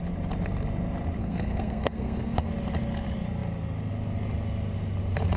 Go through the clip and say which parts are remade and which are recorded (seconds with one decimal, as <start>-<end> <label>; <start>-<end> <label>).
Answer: 0.0-1.2 recorded; 1.2-2.5 remade; 2.5-5.4 recorded

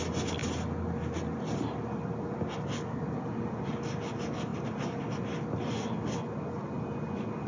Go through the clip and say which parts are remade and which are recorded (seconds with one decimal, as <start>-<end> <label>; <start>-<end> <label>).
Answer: 0.0-7.5 recorded

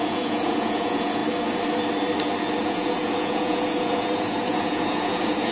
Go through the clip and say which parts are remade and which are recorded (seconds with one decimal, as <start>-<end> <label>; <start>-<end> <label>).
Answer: 0.0-1.2 remade; 1.2-2.6 recorded; 2.6-5.5 remade

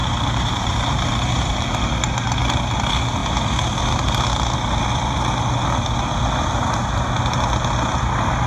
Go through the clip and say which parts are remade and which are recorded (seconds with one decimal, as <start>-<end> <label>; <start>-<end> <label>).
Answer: 0.0-1.7 remade; 1.7-8.5 recorded

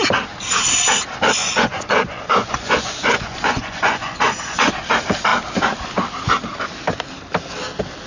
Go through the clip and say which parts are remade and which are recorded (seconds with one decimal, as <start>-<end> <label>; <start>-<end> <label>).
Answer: 0.0-1.4 recorded; 1.4-4.7 remade; 4.7-8.1 recorded

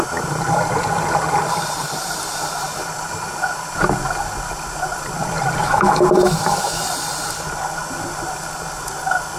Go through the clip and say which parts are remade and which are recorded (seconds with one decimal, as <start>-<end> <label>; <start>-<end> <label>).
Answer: 0.0-5.6 recorded; 5.6-6.8 remade; 6.8-9.4 recorded

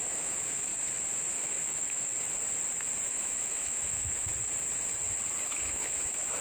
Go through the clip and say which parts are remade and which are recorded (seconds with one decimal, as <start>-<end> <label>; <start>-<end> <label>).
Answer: 0.0-0.7 remade; 0.7-1.3 recorded; 1.3-2.1 remade; 2.1-3.1 recorded; 3.1-4.3 remade; 4.3-5.5 recorded; 5.5-6.4 remade

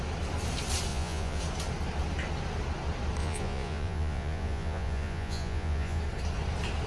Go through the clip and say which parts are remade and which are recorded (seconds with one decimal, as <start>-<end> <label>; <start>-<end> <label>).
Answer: 0.0-0.9 recorded; 0.9-1.4 remade; 1.4-3.2 recorded; 3.2-6.0 remade; 6.0-6.9 recorded